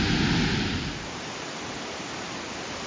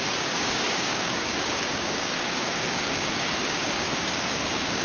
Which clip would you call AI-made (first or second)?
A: second